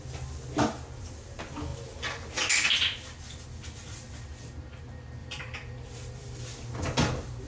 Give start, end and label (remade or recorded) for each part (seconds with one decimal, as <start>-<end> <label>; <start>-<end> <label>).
0.0-5.2 recorded; 5.2-6.4 remade; 6.4-7.5 recorded